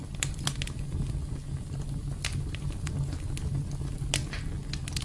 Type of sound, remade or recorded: recorded